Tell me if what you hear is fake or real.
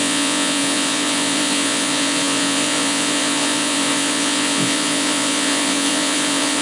fake